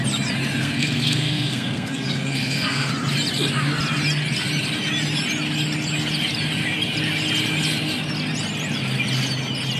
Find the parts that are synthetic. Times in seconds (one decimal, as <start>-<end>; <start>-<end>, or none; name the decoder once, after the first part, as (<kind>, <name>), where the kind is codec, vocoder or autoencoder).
0.6-2.9 (codec, SNAC)